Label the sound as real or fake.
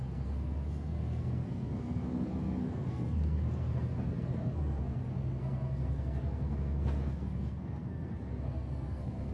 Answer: fake